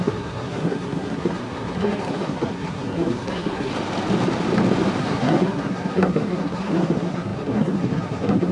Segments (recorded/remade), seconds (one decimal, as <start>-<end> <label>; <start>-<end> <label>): 0.0-3.7 remade; 3.7-5.0 recorded; 5.0-8.5 remade